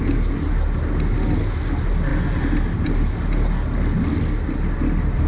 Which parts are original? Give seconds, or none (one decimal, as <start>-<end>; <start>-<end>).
0.0-5.3